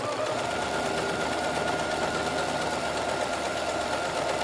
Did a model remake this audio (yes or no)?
no